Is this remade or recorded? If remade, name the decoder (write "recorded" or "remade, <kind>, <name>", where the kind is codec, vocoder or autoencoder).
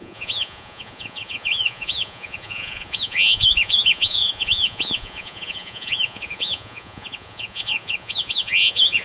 remade, vocoder, Vocos